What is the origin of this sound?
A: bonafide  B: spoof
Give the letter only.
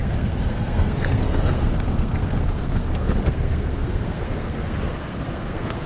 B